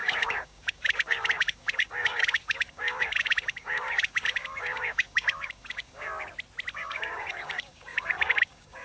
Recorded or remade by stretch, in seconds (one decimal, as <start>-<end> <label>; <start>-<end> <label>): 0.0-6.1 remade; 6.1-6.7 recorded; 6.7-8.8 remade